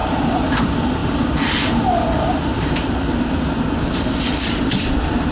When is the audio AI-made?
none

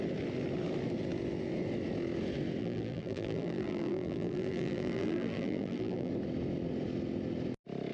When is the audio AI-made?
2.6-6.1 (vocoder, BigVGAN v2)